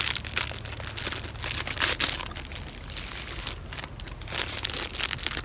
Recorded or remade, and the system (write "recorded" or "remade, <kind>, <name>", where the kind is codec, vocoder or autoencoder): recorded